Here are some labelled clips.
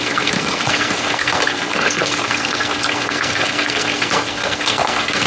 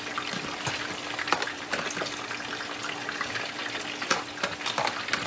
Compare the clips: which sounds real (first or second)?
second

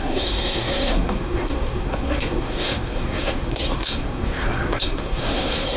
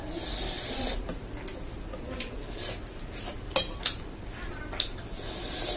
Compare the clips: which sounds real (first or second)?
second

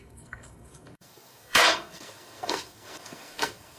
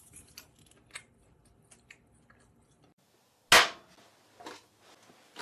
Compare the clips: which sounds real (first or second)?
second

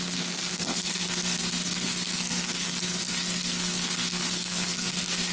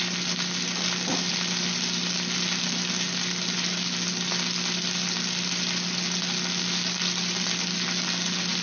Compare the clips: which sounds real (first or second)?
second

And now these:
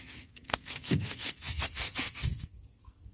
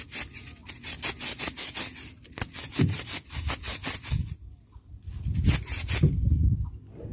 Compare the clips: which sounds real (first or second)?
second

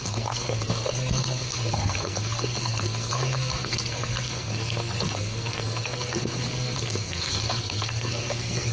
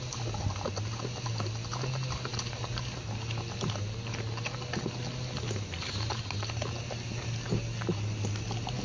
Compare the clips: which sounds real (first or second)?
second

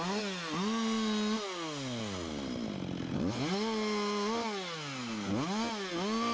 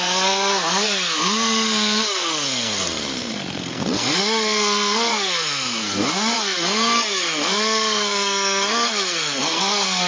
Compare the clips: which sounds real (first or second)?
first